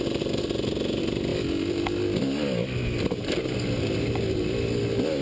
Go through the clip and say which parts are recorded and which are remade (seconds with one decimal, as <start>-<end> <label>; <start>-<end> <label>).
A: 0.0-5.2 recorded